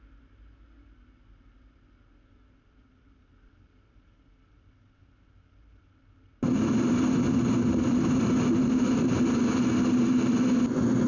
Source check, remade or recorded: recorded